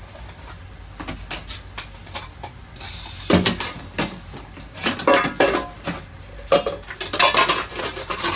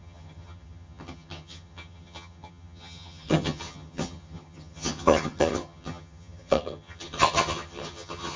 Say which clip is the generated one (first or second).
second